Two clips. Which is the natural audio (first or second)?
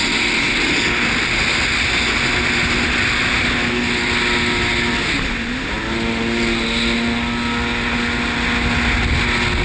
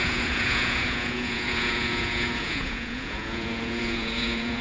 first